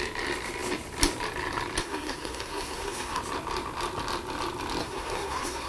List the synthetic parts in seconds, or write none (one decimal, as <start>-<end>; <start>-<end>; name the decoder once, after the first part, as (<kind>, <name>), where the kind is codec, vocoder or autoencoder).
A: 1.8-3.2 (codec, SNAC); 4.8-5.7